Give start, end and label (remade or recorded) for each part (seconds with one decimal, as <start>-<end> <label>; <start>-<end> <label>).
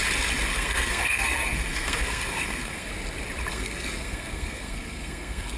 0.0-0.5 recorded; 0.5-2.9 remade; 2.9-3.5 recorded; 3.5-5.6 remade